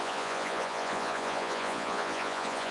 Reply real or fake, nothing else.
fake